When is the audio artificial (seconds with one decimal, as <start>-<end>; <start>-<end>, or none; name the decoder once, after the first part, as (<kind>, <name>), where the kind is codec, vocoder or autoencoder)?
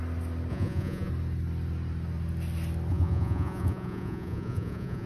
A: 0.5-1.1 (vocoder, Vocos); 2.9-5.1